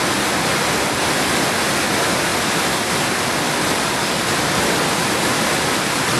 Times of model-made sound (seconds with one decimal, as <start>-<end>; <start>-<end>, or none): none